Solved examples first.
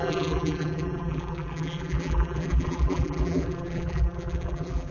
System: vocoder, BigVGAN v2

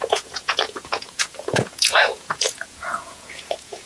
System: vocoder, Vocos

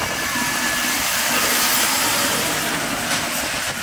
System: none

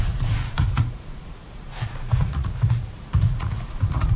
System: vocoder, Vocos